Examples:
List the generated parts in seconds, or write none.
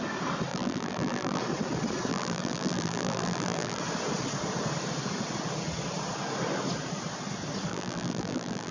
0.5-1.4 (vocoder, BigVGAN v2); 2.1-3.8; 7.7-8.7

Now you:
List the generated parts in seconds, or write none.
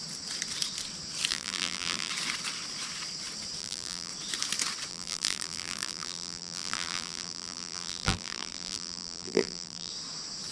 1.3-2.1 (vocoder, BigVGAN v2); 3.6-4.1; 4.9-9.9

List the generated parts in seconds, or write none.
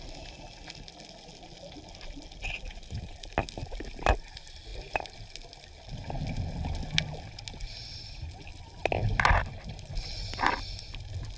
4.7-5.2 (vocoder, BigVGAN v2)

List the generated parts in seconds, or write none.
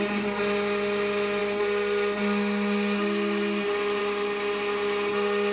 none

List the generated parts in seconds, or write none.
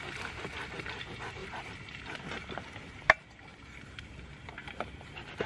1.4-2.0 (vocoder, BigVGAN v2)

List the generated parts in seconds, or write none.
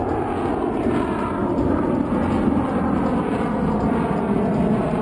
1.4-4.4 (vocoder, BigVGAN v2)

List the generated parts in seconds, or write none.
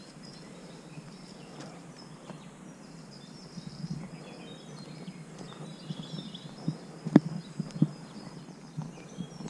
0.0-3.5 (vocoder, BigVGAN v2)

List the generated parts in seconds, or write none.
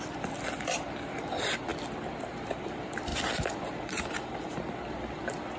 0.0-1.7 (vocoder, BigVGAN v2); 2.3-5.6